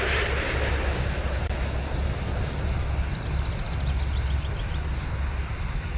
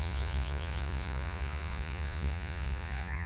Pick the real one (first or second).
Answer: first